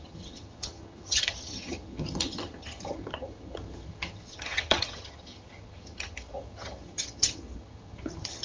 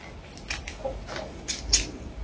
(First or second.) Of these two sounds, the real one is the second